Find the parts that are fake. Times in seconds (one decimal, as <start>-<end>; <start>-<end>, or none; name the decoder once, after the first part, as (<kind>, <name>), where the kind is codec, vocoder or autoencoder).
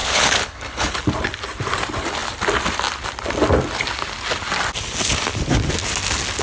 0.0-1.0 (codec, HILCodec)